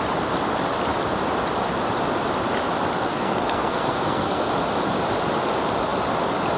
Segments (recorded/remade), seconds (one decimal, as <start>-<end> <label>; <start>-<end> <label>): 0.0-3.1 recorded; 3.1-4.5 remade; 4.5-6.6 recorded